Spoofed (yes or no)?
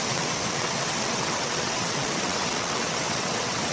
yes